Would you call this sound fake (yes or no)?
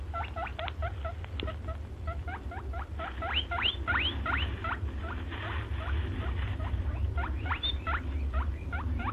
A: no